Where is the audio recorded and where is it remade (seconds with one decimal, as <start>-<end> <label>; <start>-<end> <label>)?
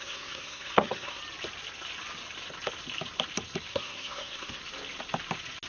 0.0-1.2 remade; 1.2-3.7 recorded; 3.7-4.6 remade; 4.6-5.7 recorded